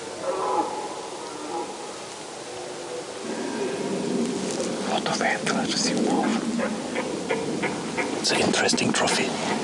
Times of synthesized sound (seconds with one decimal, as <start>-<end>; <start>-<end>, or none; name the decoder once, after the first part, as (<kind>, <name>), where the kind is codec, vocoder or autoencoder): none